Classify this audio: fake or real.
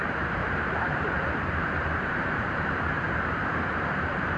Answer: fake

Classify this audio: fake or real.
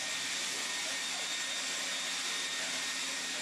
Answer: real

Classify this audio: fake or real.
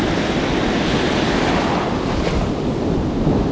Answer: real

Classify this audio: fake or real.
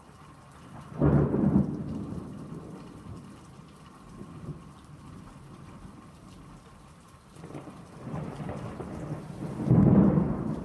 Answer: real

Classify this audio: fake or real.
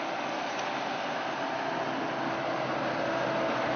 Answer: real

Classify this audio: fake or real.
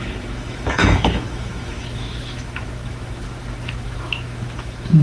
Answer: fake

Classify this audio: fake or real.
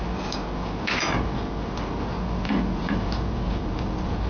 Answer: real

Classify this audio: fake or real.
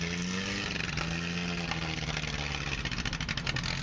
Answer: real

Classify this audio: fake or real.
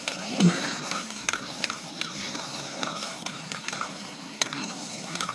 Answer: fake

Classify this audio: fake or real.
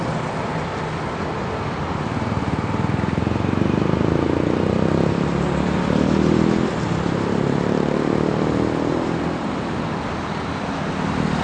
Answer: real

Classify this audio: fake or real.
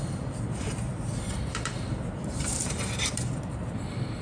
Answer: fake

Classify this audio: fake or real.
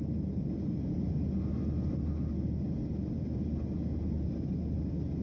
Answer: real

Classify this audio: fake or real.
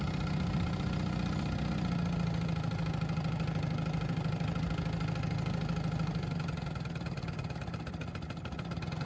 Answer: real